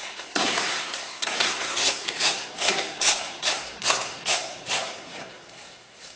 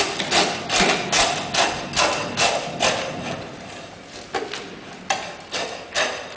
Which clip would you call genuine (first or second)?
second